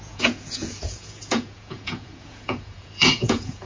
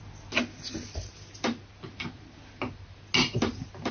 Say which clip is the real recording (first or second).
second